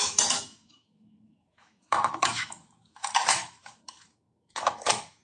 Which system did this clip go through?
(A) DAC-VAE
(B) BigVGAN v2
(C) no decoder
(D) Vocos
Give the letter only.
A